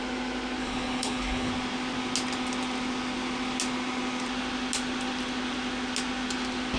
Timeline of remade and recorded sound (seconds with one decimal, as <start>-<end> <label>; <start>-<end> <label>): 0.0-0.6 recorded; 0.6-1.5 remade; 1.5-6.8 recorded